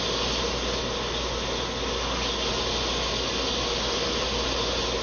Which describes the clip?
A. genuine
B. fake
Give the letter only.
A